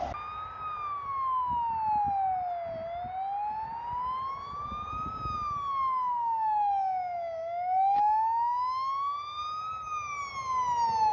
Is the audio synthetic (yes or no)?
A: no